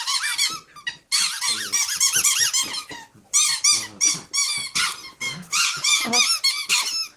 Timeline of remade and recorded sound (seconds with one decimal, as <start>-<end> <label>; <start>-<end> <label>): 0.0-1.8 recorded; 1.8-2.3 remade; 2.3-7.2 recorded